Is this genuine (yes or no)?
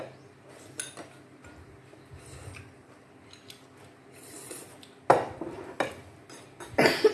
yes